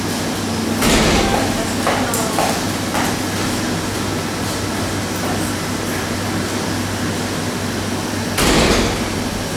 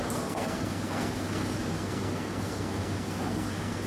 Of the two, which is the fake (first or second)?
second